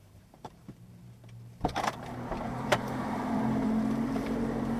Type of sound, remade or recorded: remade